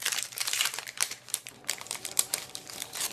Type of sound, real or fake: fake